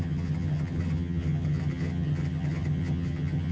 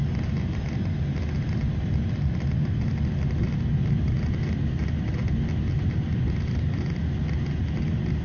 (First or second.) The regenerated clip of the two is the first